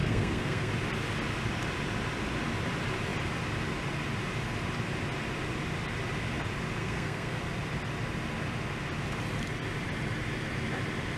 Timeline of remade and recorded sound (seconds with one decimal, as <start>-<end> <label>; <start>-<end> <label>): 0.0-0.7 remade; 0.7-6.8 recorded; 6.8-7.4 remade; 7.4-11.2 recorded